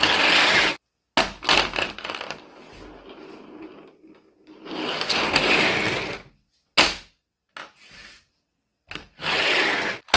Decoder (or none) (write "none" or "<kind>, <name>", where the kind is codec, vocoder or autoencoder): none